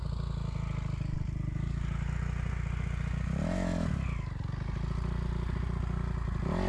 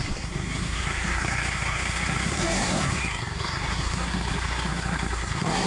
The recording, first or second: first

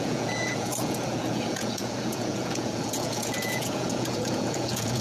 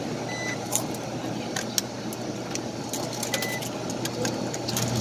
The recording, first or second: second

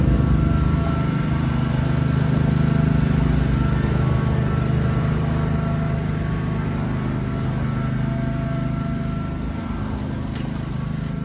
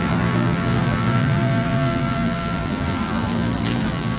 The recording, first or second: first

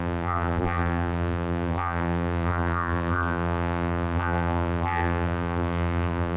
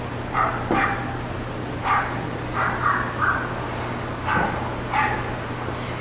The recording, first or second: second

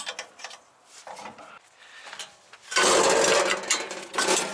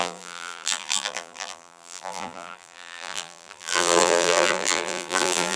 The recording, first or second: first